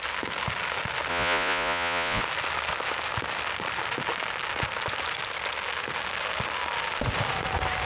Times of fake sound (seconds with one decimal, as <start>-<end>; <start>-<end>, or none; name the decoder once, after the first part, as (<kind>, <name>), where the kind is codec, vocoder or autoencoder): 1.1-2.2 (vocoder, Vocos)

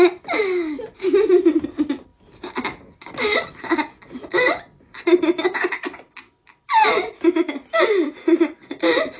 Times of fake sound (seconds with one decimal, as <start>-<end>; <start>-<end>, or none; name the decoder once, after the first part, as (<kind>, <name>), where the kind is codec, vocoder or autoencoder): none

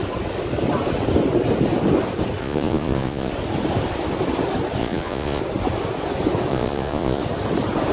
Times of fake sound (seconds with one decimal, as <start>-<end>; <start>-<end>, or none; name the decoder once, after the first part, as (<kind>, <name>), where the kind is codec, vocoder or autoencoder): 2.4-3.3 (vocoder, Vocos); 4.8-5.4; 6.5-7.2

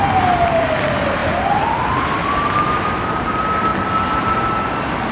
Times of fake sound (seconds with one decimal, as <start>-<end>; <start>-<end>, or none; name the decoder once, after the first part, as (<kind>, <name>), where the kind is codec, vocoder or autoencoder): none

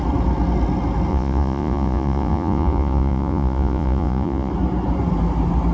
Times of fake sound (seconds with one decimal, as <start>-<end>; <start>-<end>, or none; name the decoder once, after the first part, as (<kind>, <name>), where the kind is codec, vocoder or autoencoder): 1.1-4.5 (vocoder, Vocos)